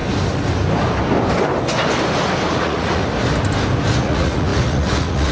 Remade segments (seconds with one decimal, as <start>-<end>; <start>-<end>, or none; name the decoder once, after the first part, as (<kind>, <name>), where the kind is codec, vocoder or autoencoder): 2.5-3.0 (vocoder, Vocos); 4.0-5.3